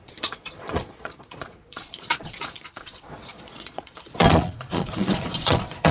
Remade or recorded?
remade